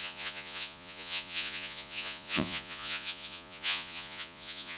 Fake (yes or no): yes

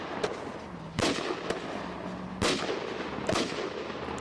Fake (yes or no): no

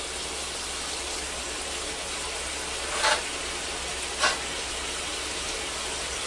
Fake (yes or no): no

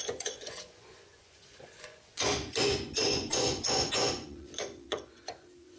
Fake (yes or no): yes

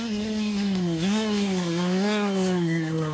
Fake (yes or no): yes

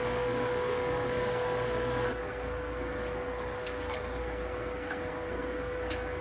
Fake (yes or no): yes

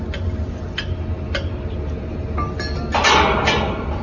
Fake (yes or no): no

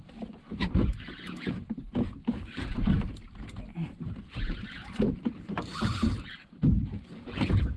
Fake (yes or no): yes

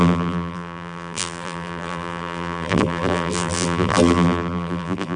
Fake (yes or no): yes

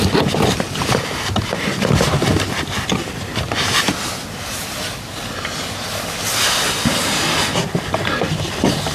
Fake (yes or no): no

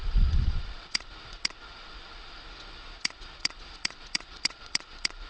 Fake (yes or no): yes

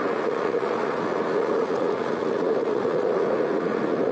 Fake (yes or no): yes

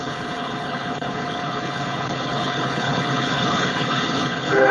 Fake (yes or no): yes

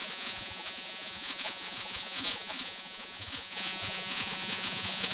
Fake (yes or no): yes